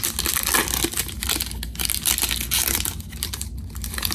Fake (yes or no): no